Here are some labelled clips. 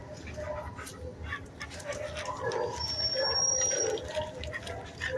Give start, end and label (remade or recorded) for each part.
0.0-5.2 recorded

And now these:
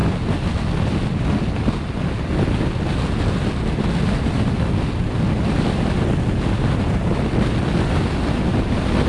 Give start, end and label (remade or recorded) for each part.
0.0-9.1 recorded

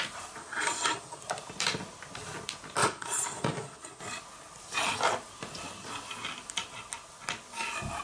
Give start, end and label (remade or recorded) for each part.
0.0-0.4 recorded; 0.4-1.2 remade; 1.2-2.8 recorded; 2.8-4.0 remade; 4.0-8.0 recorded

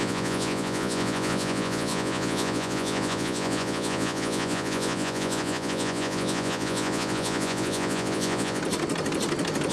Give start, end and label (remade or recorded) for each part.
0.0-8.6 remade; 8.6-9.7 recorded

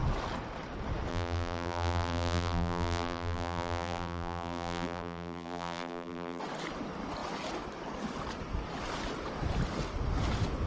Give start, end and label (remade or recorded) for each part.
0.0-1.1 recorded; 1.1-6.4 remade; 6.4-10.7 recorded

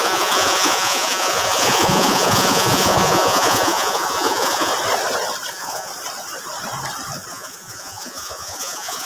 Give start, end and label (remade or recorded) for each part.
0.0-4.7 remade; 4.7-5.5 recorded; 5.5-5.9 remade; 5.9-7.3 recorded; 7.3-9.1 remade

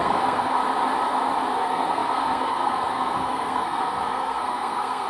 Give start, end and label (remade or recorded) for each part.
0.0-0.6 remade; 0.6-1.5 recorded; 1.5-5.1 remade